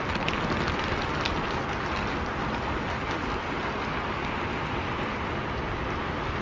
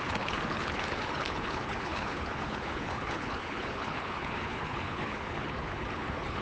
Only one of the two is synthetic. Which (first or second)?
second